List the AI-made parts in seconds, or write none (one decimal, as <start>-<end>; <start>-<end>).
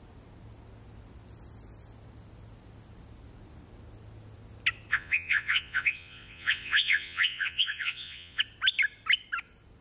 4.9-8.4